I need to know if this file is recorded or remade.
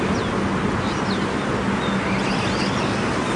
recorded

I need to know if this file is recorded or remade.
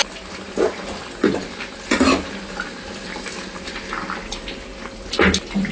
recorded